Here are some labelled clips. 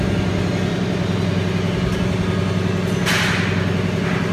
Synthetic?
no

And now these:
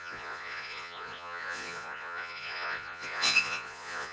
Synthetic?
yes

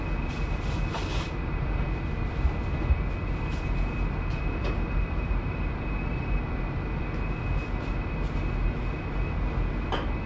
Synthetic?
no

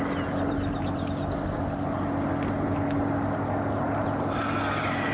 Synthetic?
no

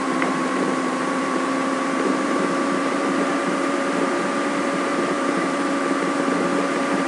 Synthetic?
yes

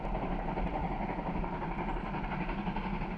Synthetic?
no